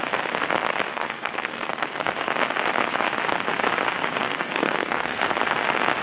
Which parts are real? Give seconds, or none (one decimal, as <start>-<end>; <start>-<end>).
0.0-0.9; 2.1-4.2; 5.2-6.0